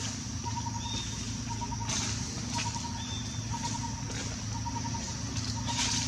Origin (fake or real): real